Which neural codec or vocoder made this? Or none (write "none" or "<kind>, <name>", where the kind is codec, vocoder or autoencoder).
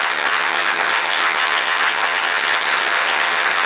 vocoder, HiFi-GAN